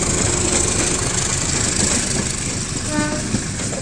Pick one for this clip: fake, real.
real